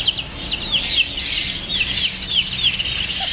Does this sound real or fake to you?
real